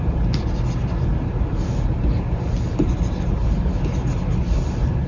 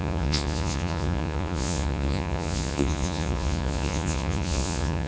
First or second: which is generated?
second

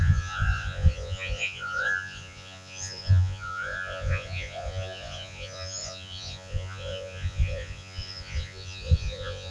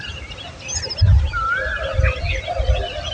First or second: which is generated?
first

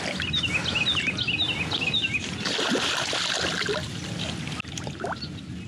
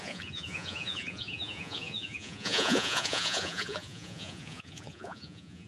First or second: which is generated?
second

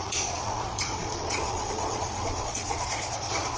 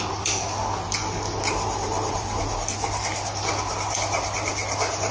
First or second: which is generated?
first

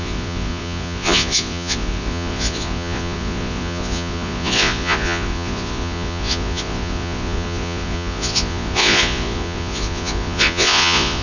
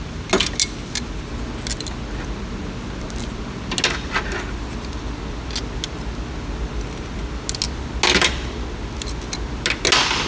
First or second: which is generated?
first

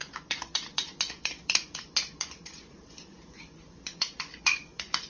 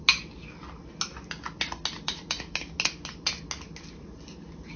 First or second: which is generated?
first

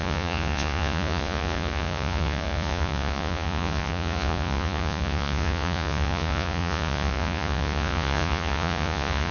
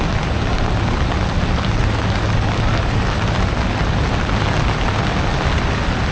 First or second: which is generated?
first